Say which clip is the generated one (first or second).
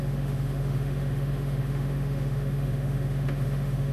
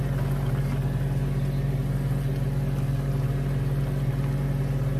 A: first